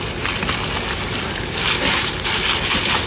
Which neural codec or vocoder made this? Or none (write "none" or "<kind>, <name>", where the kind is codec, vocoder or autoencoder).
none